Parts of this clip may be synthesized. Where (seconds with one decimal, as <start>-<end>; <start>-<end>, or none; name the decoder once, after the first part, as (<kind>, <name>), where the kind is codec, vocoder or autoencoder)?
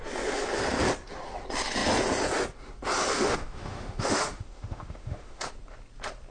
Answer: 3.1-5.4 (autoencoder, DAC-VAE)